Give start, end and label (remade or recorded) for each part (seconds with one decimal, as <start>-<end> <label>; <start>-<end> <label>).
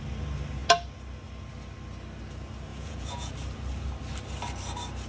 0.0-2.7 recorded; 2.7-3.3 remade; 3.3-5.1 recorded